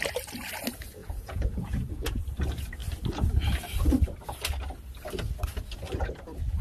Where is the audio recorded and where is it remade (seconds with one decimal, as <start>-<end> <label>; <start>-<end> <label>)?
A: 0.0-1.0 recorded; 1.0-2.2 remade; 2.2-6.6 recorded